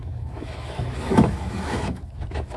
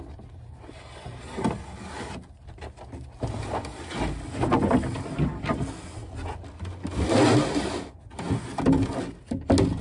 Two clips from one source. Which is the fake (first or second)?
first